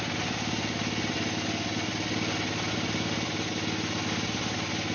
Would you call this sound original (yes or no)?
yes